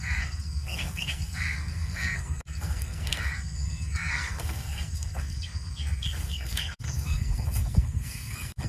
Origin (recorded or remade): remade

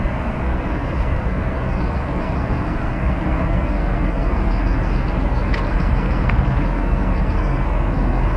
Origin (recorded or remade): remade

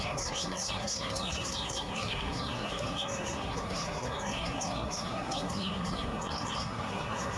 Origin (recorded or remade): remade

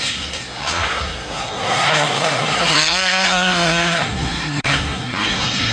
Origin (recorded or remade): remade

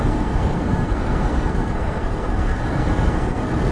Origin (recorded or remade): remade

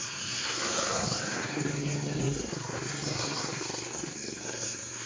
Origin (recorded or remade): remade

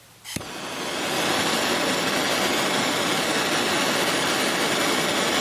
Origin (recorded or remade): recorded